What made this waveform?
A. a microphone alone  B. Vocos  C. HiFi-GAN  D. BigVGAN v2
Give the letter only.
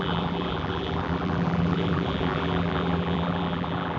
D